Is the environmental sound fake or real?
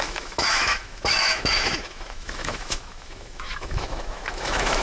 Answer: fake